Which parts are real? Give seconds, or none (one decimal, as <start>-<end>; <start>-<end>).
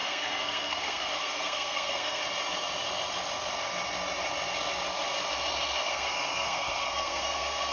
2.2-5.9